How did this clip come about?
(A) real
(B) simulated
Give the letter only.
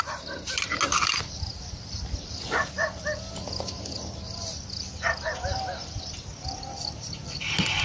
A